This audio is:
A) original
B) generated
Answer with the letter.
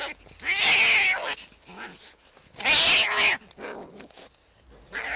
A